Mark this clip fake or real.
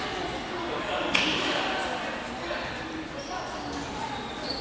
real